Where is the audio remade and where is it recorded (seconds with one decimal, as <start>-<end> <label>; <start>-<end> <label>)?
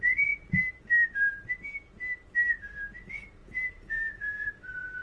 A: 0.0-0.6 remade; 0.6-3.0 recorded; 3.0-5.0 remade